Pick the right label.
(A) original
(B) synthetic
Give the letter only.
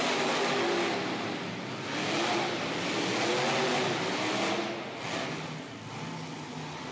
A